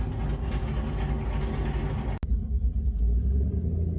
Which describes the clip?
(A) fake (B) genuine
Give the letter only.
B